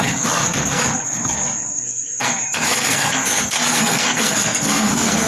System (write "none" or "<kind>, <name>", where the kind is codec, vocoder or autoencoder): codec, SNAC